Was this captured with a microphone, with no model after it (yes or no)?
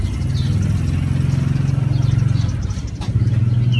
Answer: yes